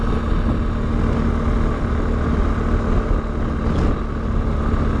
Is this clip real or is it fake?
real